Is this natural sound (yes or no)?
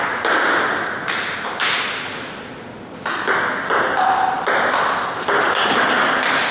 yes